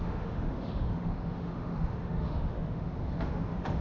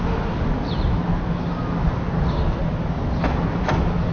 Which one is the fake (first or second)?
first